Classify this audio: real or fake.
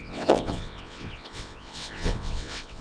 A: fake